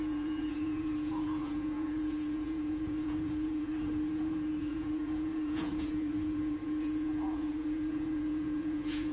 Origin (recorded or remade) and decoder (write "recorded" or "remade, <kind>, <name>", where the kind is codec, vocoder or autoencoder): remade, vocoder, Vocos